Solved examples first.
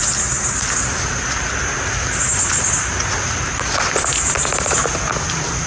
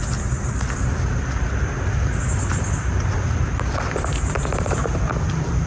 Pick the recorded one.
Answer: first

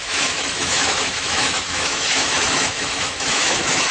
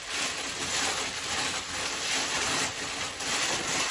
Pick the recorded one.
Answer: second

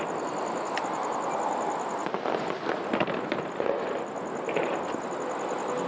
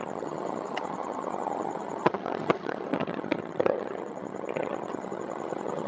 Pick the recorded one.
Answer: first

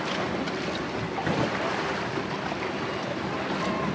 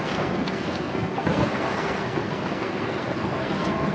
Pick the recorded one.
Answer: first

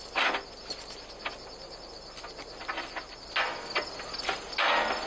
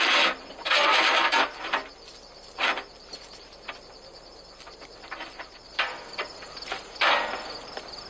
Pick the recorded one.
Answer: first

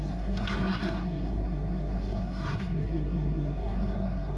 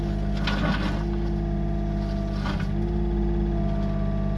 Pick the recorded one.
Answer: second